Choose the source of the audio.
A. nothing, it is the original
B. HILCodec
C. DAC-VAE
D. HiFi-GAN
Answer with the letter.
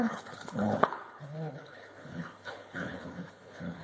B